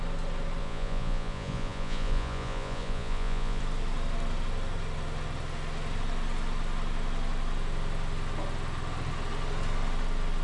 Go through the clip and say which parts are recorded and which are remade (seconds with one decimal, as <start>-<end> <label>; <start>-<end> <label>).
0.0-0.6 recorded; 0.6-3.6 remade; 3.6-10.4 recorded